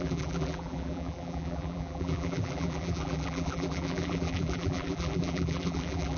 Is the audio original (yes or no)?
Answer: no